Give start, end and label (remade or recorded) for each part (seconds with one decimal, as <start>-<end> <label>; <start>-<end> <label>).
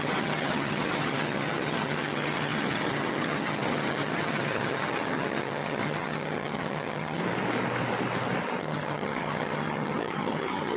0.0-7.2 remade; 7.2-8.6 recorded; 8.6-10.8 remade